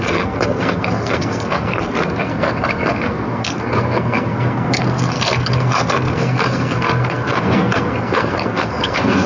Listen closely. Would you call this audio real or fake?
fake